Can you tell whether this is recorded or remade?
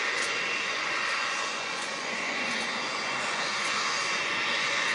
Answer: remade